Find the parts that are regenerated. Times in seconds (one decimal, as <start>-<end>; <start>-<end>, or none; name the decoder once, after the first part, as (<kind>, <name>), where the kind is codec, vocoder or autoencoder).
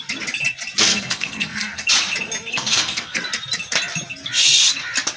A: 0.9-1.9 (codec, SNAC); 2.5-3.2